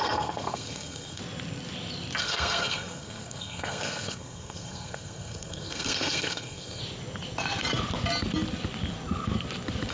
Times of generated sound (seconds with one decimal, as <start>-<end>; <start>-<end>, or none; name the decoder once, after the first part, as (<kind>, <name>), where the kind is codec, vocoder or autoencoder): 0.0-1.2 (codec, SNAC); 2.2-6.8